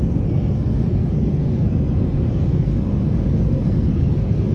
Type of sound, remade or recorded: remade